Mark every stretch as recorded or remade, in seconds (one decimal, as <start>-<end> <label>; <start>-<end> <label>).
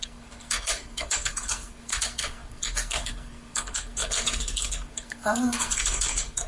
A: 0.0-6.5 remade